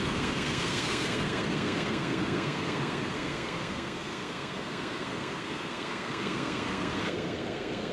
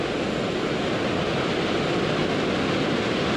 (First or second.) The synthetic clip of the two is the first